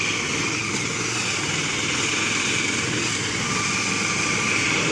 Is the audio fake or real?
real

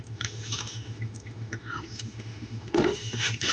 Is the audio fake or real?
fake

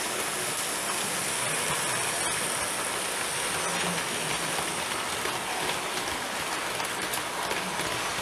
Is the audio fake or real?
real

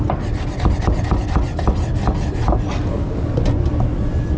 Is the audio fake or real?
real